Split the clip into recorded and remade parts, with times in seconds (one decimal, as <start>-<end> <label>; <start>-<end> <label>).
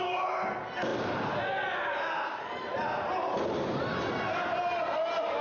0.0-5.4 recorded